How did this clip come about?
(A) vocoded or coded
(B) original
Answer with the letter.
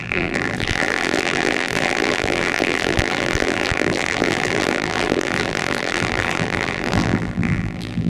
A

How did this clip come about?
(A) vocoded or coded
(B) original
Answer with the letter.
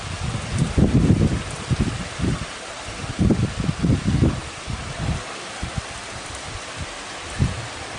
A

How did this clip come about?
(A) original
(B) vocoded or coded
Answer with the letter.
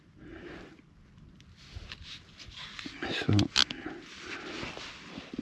A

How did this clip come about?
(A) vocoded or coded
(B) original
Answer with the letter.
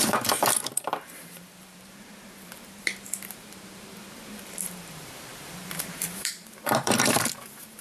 A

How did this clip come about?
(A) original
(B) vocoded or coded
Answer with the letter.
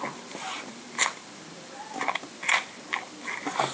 B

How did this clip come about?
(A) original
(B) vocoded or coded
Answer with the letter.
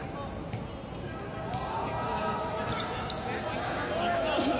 A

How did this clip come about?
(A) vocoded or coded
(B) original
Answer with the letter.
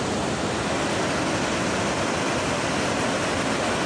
B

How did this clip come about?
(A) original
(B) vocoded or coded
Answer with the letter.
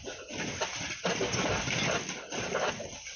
A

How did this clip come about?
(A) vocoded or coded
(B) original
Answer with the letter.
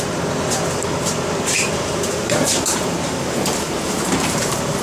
A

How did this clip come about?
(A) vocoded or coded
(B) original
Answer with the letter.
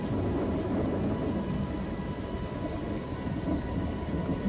B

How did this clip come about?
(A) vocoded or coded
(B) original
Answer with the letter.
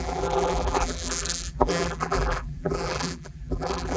A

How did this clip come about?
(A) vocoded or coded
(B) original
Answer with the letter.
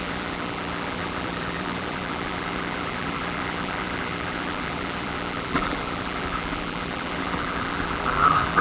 A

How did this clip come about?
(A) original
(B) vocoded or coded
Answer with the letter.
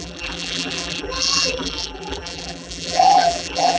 B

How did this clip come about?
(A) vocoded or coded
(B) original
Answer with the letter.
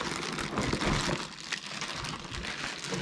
B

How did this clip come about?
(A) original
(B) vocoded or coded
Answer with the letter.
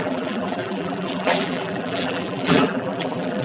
B